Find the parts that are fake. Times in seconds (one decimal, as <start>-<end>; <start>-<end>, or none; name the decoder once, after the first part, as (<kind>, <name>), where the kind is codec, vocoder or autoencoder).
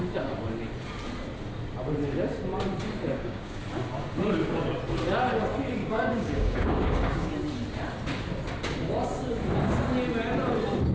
3.0-3.6 (codec, DAC); 5.8-7.3